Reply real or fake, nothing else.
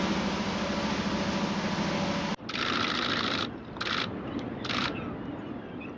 real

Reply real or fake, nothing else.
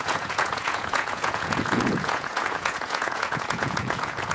fake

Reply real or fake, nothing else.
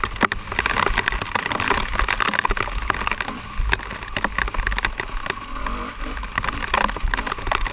real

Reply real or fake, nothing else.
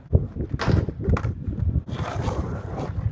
real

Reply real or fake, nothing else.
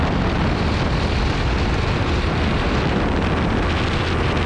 real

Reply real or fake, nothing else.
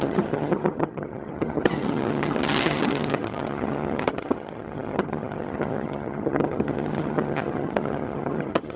fake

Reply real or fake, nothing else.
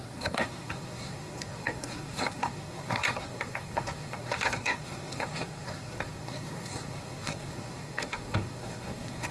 fake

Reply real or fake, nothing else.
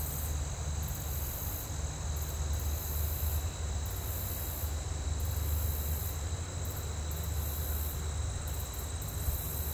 real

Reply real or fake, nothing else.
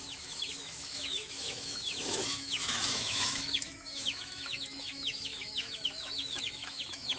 fake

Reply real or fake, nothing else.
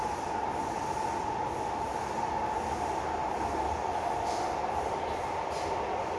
real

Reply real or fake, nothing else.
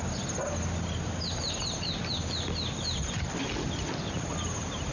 real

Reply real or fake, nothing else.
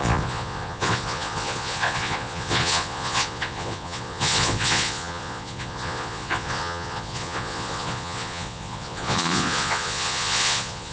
fake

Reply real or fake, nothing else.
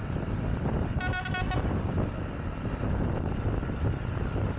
real